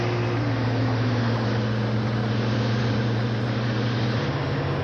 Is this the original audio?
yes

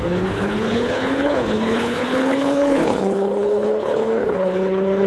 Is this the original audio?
no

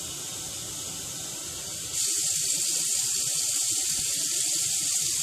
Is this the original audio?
no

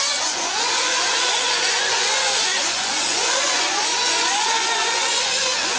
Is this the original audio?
no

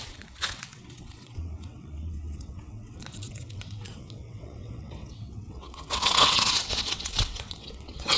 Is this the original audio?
no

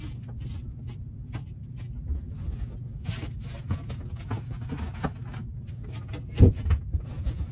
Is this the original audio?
yes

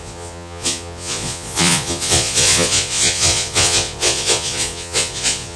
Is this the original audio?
no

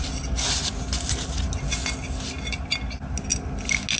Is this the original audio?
yes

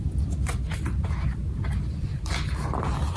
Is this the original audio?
no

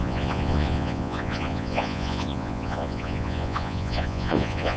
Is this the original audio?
no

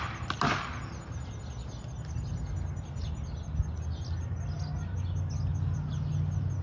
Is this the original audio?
yes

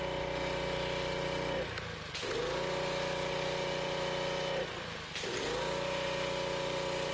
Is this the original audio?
yes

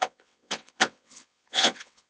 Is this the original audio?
no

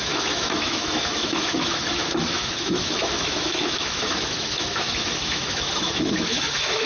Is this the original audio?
no